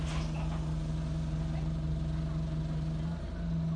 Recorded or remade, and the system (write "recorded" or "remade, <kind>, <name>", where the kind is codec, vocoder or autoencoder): recorded